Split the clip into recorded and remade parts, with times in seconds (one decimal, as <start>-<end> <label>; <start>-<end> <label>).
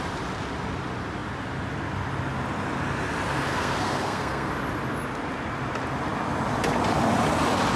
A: 0.0-3.5 recorded; 3.5-4.5 remade; 4.5-7.8 recorded